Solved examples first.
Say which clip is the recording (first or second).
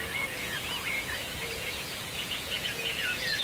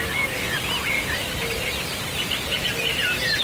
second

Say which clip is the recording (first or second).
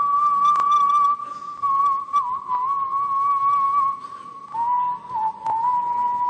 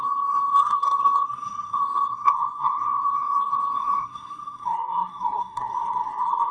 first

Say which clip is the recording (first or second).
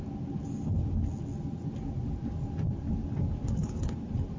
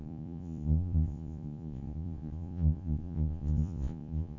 first